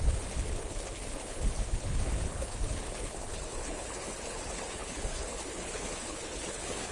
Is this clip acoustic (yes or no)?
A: no